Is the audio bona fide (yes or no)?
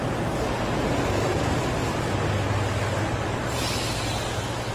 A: yes